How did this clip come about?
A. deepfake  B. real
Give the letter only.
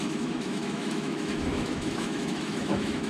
A